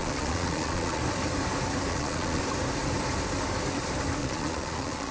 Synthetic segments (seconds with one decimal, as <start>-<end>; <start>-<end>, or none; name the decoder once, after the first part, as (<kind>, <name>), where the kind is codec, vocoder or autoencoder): 0.0-1.0 (vocoder, Vocos); 1.9-2.4; 4.2-5.1